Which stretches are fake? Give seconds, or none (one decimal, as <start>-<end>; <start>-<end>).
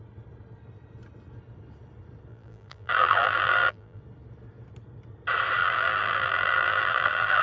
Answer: 2.3-4.0; 5.6-7.4